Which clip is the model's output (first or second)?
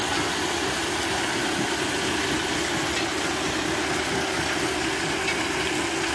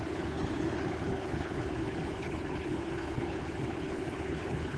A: second